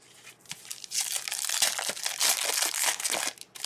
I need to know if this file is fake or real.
real